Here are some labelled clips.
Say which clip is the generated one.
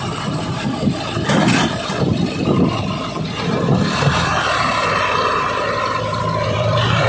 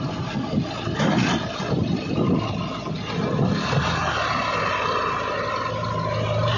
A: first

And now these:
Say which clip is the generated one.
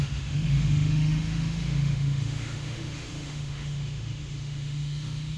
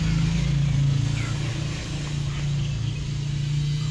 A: first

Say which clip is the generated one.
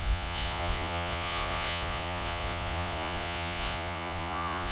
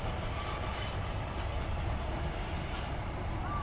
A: first